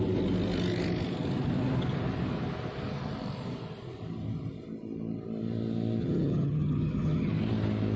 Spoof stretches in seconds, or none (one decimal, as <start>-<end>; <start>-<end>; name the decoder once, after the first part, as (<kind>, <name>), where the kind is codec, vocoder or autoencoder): 6.0-7.3 (vocoder, HiFi-GAN)